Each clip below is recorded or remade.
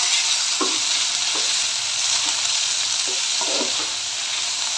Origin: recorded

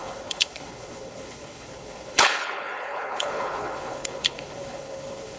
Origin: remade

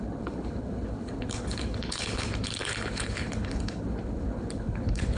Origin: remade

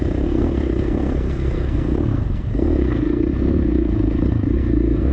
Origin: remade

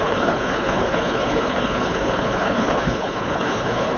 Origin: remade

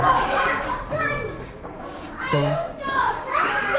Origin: remade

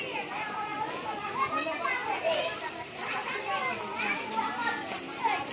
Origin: recorded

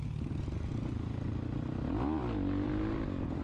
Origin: recorded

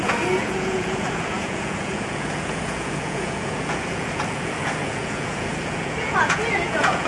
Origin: remade